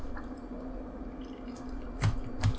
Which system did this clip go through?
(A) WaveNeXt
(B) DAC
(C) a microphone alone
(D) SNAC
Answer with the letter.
C